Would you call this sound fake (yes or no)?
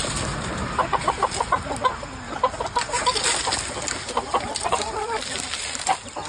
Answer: no